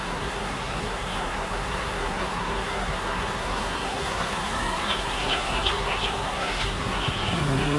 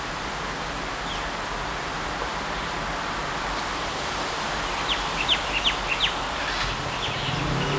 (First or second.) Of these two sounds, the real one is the second